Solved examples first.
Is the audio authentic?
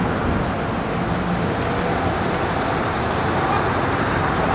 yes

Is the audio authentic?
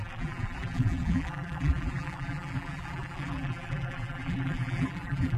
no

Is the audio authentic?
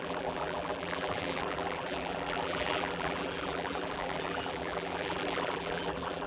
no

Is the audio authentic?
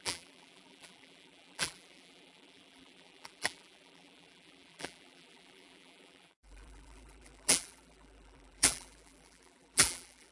no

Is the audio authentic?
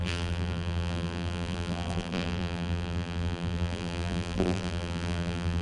no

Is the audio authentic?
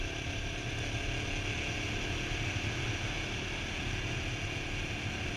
yes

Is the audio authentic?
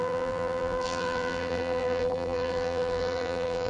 no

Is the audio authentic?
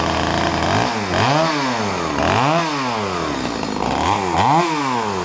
yes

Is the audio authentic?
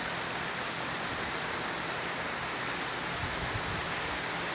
yes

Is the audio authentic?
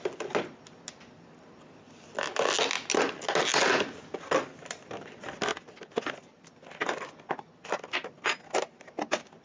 yes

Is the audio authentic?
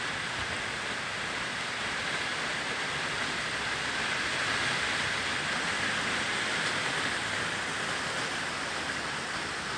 yes